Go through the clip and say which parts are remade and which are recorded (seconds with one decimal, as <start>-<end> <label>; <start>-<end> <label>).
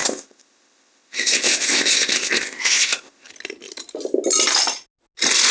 0.0-3.3 remade; 3.3-5.5 recorded